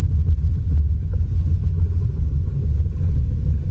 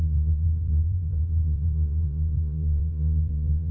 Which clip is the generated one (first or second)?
second